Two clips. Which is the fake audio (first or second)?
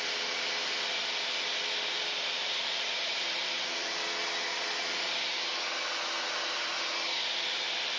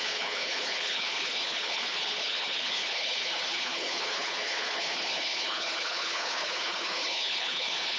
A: second